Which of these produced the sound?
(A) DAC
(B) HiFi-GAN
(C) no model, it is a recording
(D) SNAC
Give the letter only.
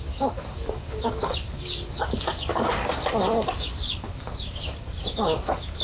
A